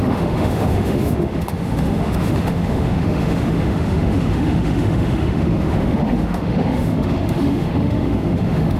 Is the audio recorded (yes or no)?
no